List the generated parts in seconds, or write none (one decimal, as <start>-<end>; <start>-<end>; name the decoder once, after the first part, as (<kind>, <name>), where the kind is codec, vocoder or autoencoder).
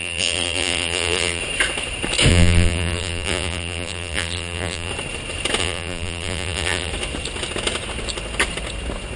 0.0-1.4 (vocoder, BigVGAN v2); 2.3-4.9; 5.6-6.9